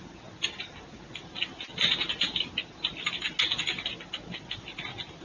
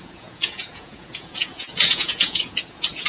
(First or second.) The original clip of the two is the first